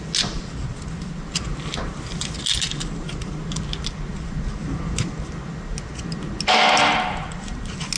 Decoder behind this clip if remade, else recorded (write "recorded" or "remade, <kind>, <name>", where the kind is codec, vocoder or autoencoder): recorded